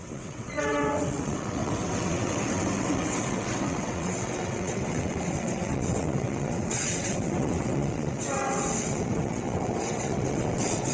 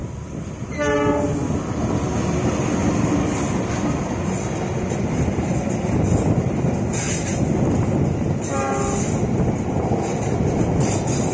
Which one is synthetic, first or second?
first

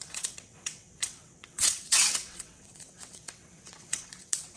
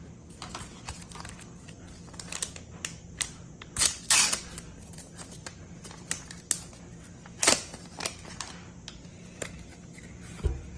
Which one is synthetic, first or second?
first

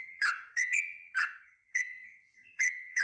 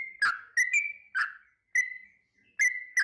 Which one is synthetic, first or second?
first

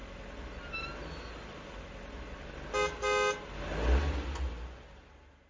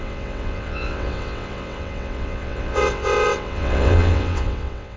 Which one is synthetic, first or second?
second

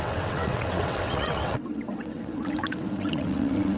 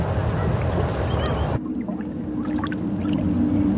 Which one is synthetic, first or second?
first